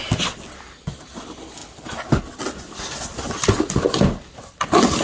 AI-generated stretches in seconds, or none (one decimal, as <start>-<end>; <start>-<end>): none